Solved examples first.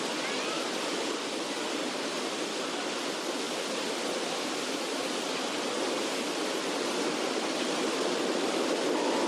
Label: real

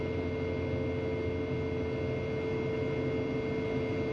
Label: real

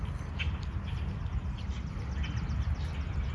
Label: real